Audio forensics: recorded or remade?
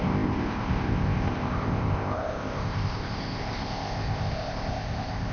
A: remade